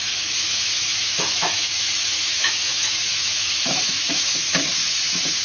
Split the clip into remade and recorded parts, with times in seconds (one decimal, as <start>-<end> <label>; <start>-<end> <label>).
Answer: 0.0-5.4 remade